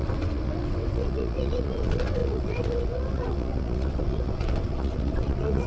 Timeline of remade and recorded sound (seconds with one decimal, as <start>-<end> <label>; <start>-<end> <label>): 0.0-5.7 remade

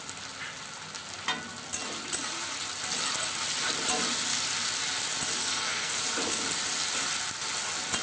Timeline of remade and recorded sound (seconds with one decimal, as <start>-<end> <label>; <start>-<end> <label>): 0.0-5.4 recorded; 5.4-6.0 remade; 6.0-8.0 recorded

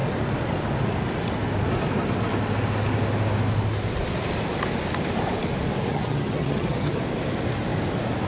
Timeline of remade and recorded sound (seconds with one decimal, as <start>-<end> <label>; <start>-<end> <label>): 0.0-5.9 recorded; 5.9-7.0 remade; 7.0-8.3 recorded

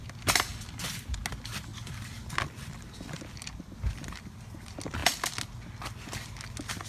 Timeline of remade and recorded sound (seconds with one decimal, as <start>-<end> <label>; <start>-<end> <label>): 0.0-0.5 recorded; 0.5-1.2 remade; 1.2-1.7 recorded; 1.7-2.3 remade; 2.3-6.9 recorded

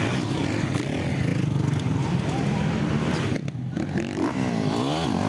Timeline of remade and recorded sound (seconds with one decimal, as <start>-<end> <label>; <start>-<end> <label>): 0.0-5.3 recorded